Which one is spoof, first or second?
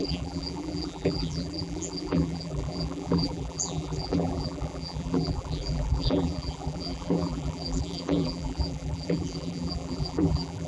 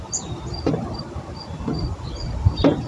first